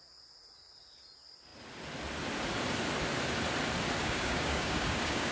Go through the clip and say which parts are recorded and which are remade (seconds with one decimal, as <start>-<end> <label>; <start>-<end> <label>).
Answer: 0.0-4.0 recorded; 4.0-5.3 remade